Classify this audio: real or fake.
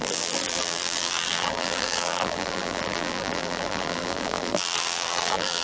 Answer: fake